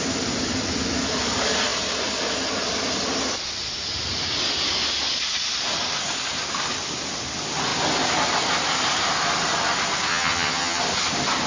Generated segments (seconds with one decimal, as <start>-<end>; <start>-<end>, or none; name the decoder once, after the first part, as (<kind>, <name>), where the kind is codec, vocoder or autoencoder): 10.1-10.8 (vocoder, HiFi-GAN)